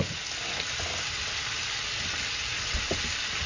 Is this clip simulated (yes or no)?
no